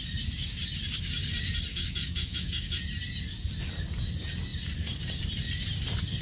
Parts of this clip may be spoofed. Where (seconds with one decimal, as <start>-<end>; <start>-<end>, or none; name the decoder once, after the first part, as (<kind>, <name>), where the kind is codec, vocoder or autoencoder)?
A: 1.7-2.8 (autoencoder, DAC-VAE)

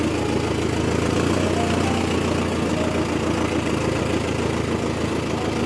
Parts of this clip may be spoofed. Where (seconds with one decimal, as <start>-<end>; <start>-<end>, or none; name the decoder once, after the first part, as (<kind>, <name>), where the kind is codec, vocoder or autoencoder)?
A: none

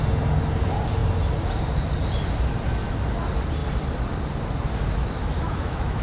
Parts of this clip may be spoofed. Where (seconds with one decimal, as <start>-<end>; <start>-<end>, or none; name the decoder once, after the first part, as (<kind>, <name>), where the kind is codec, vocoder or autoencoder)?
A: 5.0-6.0 (autoencoder, DAC-VAE)

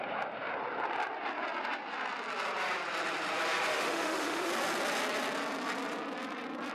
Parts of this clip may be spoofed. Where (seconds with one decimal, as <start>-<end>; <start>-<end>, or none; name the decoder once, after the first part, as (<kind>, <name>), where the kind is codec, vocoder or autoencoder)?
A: 3.7-4.5 (autoencoder, DAC-VAE)

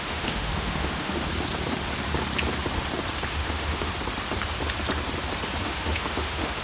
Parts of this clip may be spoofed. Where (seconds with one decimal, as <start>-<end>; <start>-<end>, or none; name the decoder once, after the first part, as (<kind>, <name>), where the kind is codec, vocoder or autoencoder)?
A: 0.0-1.3 (autoencoder, DAC-VAE); 3.3-3.9; 5.6-6.6